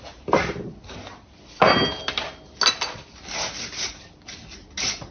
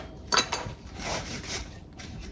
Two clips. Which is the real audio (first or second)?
first